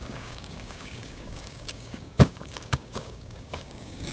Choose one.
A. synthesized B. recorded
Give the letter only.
A